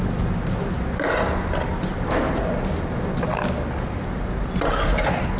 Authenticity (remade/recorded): recorded